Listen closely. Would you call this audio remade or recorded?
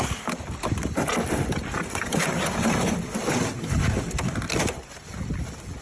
recorded